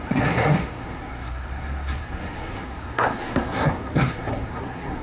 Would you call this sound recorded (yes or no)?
no